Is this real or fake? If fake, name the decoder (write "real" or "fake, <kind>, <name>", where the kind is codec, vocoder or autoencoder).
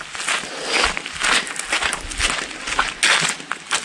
real